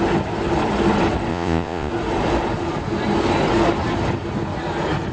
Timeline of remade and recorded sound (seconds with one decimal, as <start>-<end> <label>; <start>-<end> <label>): 0.0-1.3 recorded; 1.3-1.9 remade; 1.9-5.1 recorded